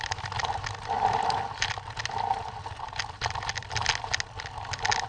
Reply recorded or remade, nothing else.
recorded